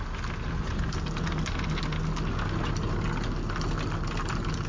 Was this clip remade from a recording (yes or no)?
no